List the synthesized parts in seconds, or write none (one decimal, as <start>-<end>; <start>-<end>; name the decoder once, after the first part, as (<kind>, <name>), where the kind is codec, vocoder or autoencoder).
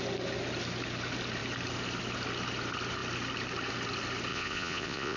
4.3-5.2 (vocoder, Vocos)